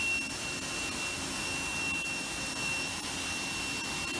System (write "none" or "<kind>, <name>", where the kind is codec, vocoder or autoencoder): none